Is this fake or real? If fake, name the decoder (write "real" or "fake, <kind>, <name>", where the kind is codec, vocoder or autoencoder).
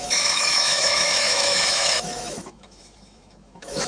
fake, autoencoder, DAC-VAE